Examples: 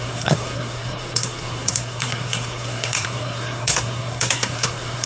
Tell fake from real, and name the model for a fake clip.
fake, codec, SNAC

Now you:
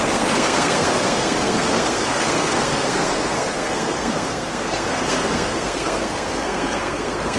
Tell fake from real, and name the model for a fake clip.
fake, codec, SNAC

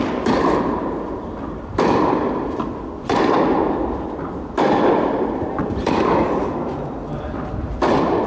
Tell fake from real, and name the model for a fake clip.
fake, vocoder, BigVGAN v2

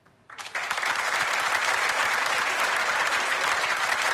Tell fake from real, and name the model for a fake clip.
fake, vocoder, BigVGAN v2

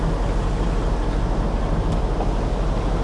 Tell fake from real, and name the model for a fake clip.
real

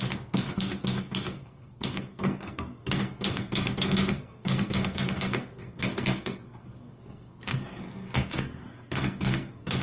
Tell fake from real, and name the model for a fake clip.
fake, codec, SNAC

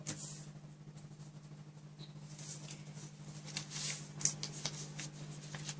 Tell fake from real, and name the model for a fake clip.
real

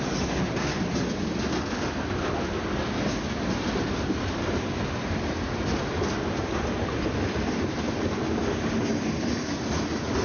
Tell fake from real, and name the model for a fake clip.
real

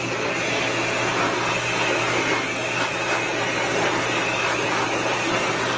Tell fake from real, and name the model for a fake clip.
real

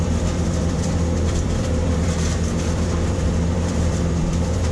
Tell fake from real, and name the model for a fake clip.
fake, vocoder, BigVGAN v2